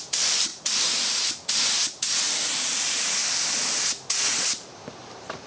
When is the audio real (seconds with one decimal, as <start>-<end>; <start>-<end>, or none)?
0.5-2.3; 3.2-4.4